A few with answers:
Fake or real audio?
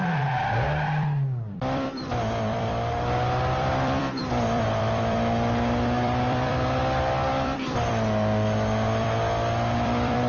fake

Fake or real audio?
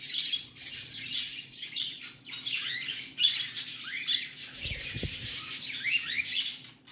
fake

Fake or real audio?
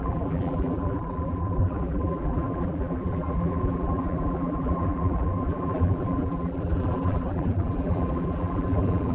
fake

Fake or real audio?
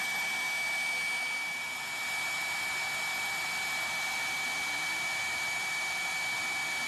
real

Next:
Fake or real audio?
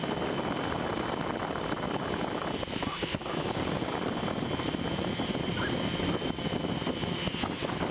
fake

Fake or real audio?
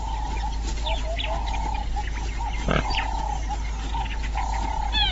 real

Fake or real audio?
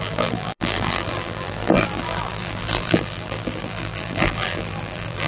fake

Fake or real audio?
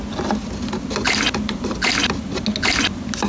real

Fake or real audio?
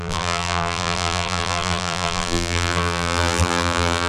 fake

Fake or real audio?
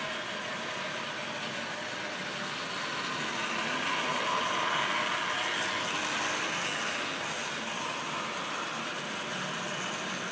real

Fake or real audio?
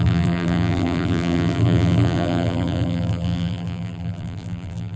fake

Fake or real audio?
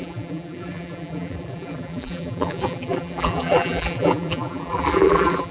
fake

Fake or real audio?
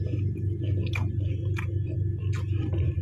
real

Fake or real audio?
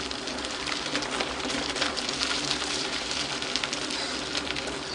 fake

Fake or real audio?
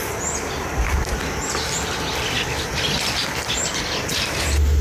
real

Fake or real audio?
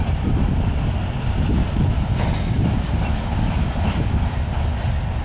real